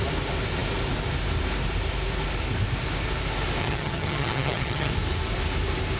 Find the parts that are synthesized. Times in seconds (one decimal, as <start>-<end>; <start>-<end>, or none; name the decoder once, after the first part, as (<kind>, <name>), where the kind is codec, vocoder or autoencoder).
3.6-4.9 (vocoder, HiFi-GAN)